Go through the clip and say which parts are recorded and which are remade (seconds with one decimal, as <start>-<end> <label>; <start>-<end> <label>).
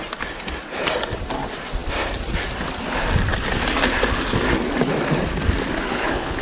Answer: 0.0-5.9 recorded; 5.9-6.4 remade